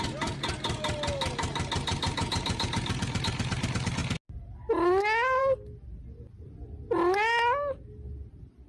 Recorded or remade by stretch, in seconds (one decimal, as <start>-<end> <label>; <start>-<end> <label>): 0.0-8.7 recorded